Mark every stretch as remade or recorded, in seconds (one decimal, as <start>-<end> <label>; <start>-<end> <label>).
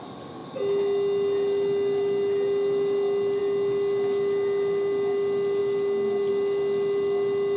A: 0.0-7.6 recorded